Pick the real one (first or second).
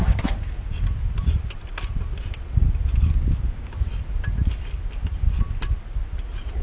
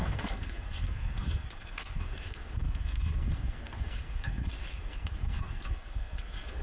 first